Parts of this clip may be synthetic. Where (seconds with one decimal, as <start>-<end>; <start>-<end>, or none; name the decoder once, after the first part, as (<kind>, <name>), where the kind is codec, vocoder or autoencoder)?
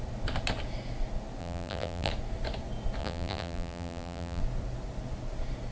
1.4-2.1 (vocoder, BigVGAN v2); 3.0-4.4